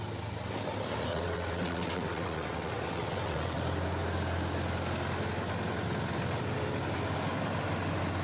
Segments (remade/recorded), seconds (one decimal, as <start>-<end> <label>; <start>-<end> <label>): 0.0-1.1 recorded; 1.1-3.6 remade; 3.6-8.2 recorded

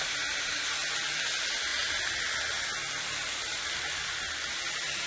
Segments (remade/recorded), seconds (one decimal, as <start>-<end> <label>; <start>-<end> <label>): 0.0-5.1 recorded

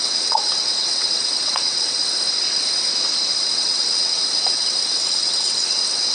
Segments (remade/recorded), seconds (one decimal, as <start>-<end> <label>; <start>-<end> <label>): 0.0-2.0 remade; 2.0-3.4 recorded; 3.4-6.1 remade

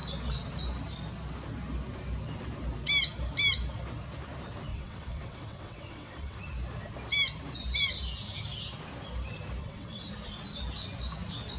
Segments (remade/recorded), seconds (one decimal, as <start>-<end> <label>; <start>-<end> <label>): 0.0-4.7 recorded; 4.7-6.4 remade; 6.4-9.6 recorded; 9.6-10.1 remade; 10.1-11.6 recorded

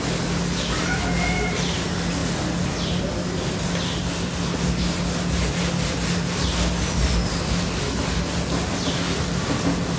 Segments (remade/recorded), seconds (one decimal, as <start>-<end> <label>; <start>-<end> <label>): 0.0-10.0 recorded

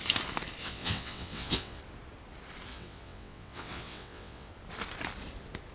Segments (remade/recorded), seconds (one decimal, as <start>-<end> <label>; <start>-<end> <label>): 0.0-0.6 recorded; 0.6-1.8 remade; 1.8-2.7 recorded; 2.7-4.5 remade; 4.5-5.7 recorded

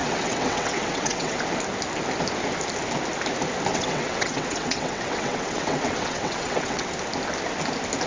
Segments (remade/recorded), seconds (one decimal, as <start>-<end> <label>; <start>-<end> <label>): 0.0-1.4 remade; 1.4-3.7 recorded; 3.7-6.9 remade; 6.9-8.1 recorded